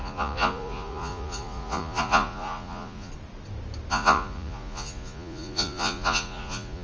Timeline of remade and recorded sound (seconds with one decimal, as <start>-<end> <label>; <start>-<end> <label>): 0.0-3.1 remade; 3.1-3.9 recorded; 3.9-6.8 remade